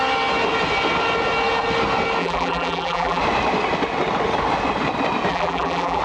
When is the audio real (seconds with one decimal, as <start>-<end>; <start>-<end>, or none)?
0.0-2.2; 3.2-5.3